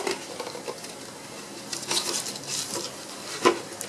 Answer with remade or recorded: recorded